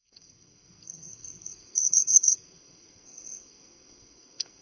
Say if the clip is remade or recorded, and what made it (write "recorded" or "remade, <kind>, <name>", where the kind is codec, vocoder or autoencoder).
remade, codec, SNAC